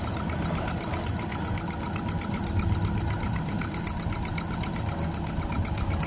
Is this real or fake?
real